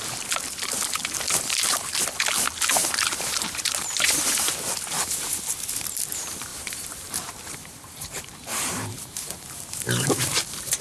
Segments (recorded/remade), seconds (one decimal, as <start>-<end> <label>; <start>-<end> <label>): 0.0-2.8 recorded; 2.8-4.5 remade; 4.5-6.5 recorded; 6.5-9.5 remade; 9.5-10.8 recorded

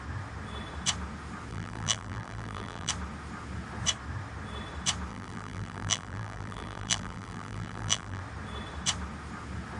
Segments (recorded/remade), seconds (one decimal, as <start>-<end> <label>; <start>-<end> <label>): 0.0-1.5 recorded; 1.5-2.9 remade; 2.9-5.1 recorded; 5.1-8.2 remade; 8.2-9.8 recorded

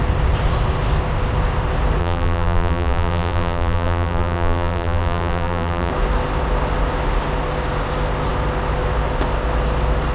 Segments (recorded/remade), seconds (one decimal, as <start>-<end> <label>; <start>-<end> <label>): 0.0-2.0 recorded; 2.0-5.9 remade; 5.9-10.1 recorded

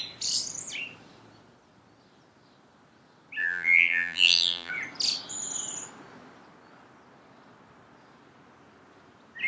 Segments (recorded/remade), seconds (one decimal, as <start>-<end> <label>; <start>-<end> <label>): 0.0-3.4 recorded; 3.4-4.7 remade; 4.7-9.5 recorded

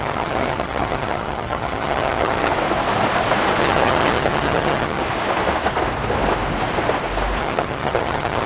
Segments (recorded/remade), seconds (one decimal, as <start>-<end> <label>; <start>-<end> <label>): 0.0-2.5 remade; 2.5-3.6 recorded; 3.6-5.0 remade; 5.0-7.4 recorded; 7.4-8.5 remade

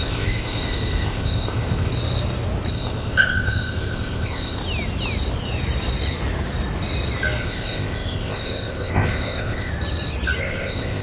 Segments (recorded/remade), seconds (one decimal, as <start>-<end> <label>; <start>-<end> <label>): 0.0-1.9 remade; 1.9-2.7 recorded; 2.7-4.6 remade; 4.6-7.4 recorded; 7.4-9.7 remade; 9.7-10.4 recorded; 10.4-11.0 remade

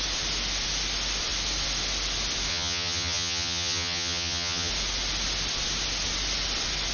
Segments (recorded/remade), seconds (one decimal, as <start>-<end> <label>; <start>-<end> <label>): 0.0-2.5 recorded; 2.5-4.7 remade; 4.7-6.9 recorded